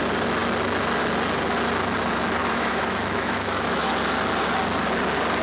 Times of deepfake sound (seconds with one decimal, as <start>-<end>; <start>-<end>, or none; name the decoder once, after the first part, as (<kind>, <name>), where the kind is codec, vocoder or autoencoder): 2.4-3.9 (autoencoder, DAC-VAE)

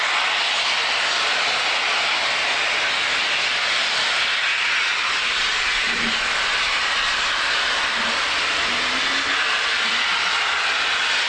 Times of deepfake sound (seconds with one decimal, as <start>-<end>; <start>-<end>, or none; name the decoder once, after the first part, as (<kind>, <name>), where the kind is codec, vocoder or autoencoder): none

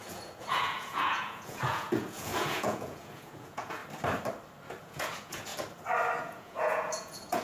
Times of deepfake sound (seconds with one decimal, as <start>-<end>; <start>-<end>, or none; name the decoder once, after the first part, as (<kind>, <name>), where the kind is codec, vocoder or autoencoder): 0.0-3.8 (vocoder, Vocos); 4.8-5.5; 6.2-7.4

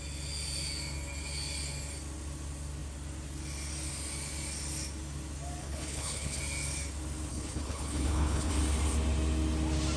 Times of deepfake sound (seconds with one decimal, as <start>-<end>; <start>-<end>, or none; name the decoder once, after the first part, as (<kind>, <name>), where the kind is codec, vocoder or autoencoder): 5.6-6.4 (codec, HILCodec); 7.3-8.5

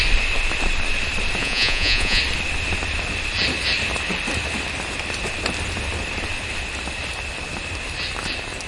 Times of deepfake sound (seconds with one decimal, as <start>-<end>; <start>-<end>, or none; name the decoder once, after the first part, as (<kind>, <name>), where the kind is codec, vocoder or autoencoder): 1.4-2.2 (vocoder, Vocos)